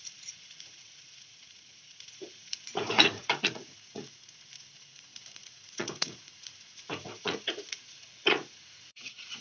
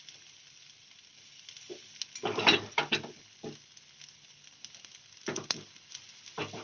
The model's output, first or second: first